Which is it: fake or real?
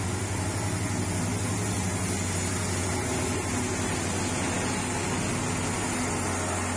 real